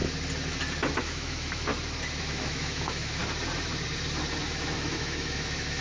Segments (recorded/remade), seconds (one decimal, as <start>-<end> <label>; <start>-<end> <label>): 0.0-1.0 recorded; 1.0-1.7 remade; 1.7-2.2 recorded; 2.2-3.2 remade; 3.2-4.4 recorded; 4.4-5.8 remade

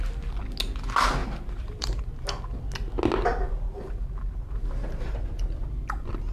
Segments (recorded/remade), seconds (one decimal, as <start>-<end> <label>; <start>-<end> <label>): 0.0-1.2 recorded; 1.2-2.0 remade; 2.0-3.3 recorded; 3.3-5.2 remade; 5.2-6.3 recorded

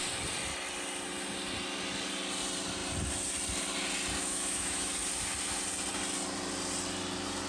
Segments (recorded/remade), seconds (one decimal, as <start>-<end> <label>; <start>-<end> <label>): 0.0-4.2 recorded; 4.2-4.9 remade; 4.9-7.5 recorded

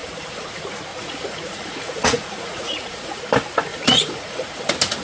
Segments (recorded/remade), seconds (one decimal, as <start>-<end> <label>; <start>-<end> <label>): 0.0-0.5 remade; 0.5-0.9 recorded; 0.9-3.2 remade; 3.2-3.7 recorded; 3.7-4.6 remade; 4.6-5.0 recorded

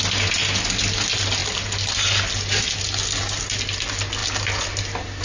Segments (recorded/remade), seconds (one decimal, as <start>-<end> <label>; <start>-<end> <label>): 0.0-5.2 recorded